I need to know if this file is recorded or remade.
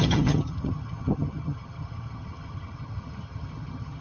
remade